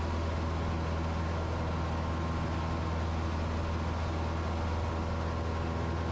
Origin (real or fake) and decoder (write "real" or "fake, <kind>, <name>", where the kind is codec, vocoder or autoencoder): real